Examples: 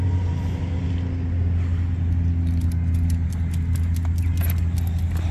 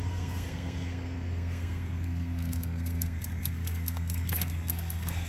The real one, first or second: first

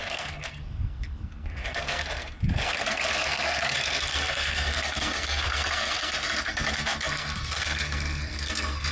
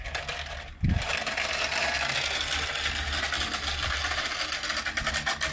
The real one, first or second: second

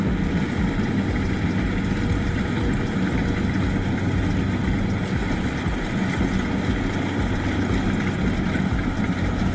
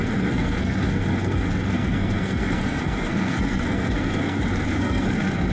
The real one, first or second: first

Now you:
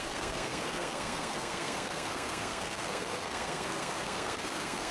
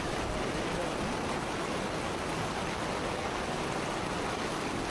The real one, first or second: second